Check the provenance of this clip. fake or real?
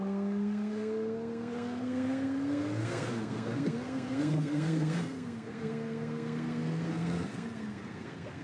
fake